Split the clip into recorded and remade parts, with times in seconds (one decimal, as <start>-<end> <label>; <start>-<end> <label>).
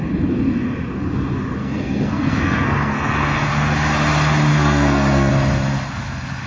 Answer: 0.0-1.6 recorded; 1.6-3.5 remade; 3.5-4.5 recorded; 4.5-5.3 remade; 5.3-6.5 recorded